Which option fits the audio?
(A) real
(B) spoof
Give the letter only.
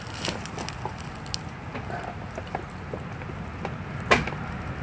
A